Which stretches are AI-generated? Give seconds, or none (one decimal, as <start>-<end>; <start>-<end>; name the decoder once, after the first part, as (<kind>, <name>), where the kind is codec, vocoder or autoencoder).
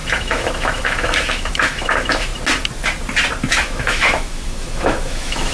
0.0-2.3 (autoencoder, DAC-VAE); 3.5-5.5